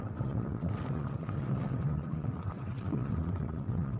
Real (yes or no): no